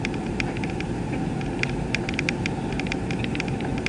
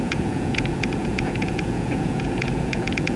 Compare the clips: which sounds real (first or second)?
first